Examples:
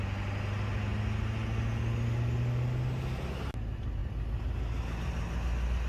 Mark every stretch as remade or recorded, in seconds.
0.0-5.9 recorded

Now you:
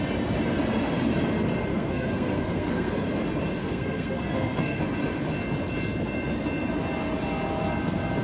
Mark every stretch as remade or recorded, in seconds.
0.0-1.7 recorded; 1.7-2.9 remade; 2.9-3.6 recorded; 3.6-4.8 remade; 4.8-8.2 recorded

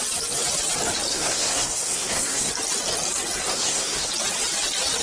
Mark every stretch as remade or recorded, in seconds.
0.0-1.1 recorded; 1.1-2.5 remade; 2.5-3.5 recorded; 3.5-4.1 remade; 4.1-5.0 recorded